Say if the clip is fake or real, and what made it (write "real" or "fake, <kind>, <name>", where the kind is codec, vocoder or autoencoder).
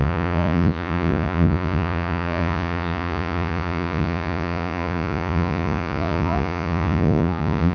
fake, vocoder, Vocos